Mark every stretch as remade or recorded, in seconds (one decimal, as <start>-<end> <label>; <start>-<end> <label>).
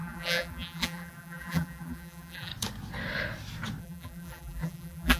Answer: 0.0-2.5 remade; 2.5-3.8 recorded; 3.8-5.2 remade